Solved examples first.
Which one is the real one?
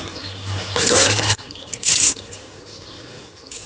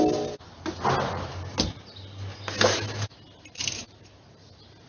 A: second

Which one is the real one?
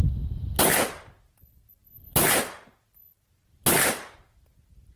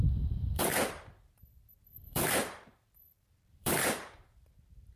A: first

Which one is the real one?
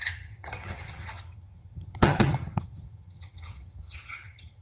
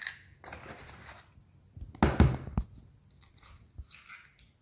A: second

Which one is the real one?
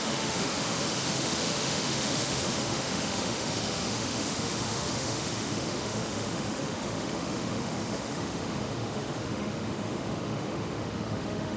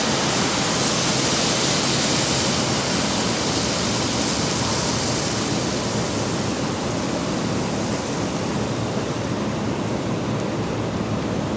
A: second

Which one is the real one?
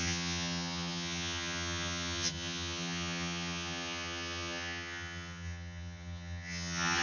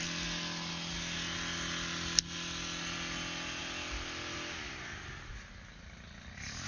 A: second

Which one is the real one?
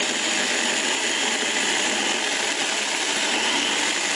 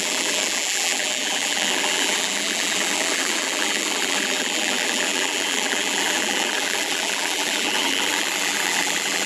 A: first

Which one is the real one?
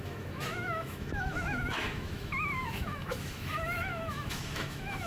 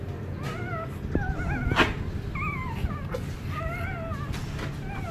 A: second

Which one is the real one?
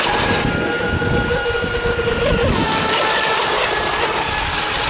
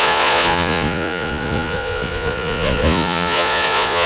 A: first